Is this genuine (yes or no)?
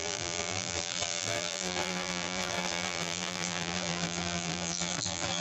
no